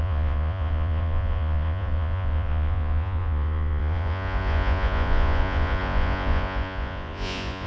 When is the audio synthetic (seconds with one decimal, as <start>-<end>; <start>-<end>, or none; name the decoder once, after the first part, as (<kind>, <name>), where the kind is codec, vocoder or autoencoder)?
0.0-7.7 (vocoder, Vocos)